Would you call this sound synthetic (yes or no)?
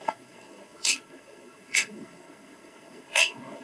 yes